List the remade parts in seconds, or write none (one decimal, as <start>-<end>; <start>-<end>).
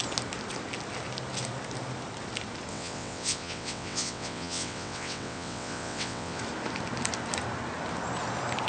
2.7-6.4